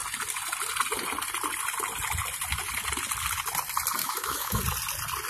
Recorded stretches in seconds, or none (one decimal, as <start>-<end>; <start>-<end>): 0.0-4.0; 4.6-5.3